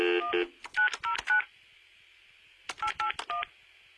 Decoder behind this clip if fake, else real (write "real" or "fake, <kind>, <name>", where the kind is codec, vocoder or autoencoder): real